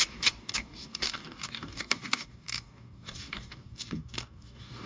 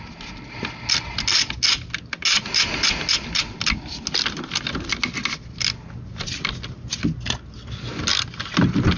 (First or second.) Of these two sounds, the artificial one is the first